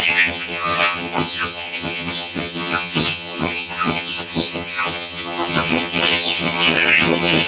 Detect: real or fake fake